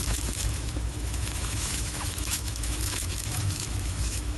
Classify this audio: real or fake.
fake